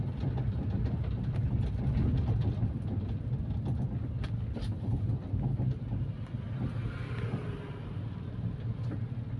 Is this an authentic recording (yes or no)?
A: yes